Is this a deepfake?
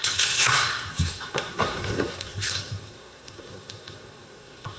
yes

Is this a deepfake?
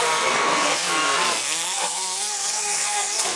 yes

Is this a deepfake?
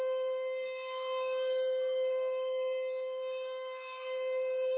yes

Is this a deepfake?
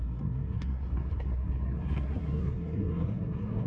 yes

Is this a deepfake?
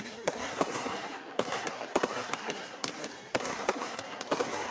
yes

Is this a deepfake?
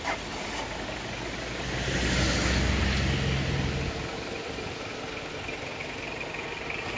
no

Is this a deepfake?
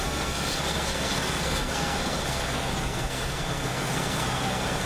yes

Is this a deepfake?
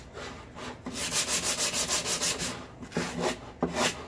no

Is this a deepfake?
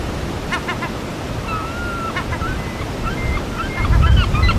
no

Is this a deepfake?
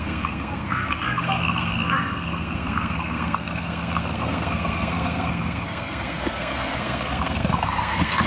yes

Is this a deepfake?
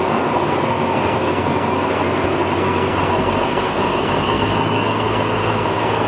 yes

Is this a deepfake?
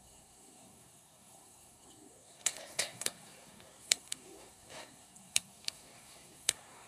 yes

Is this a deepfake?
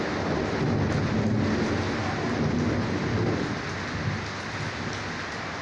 no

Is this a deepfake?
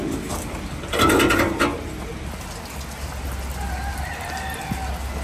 no